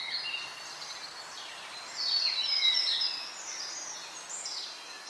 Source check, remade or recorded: recorded